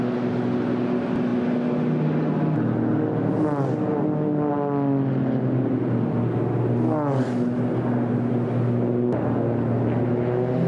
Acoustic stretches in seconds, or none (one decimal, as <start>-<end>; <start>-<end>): 0.0-10.7